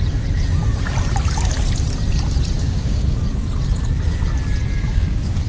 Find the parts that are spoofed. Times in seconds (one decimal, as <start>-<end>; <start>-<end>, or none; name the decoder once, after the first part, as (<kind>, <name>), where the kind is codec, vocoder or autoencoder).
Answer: 2.6-3.2 (codec, DAC); 4.8-5.5